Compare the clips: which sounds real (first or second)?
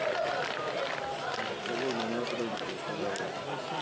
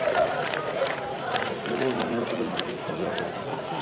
first